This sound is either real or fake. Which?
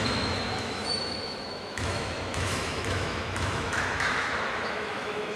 fake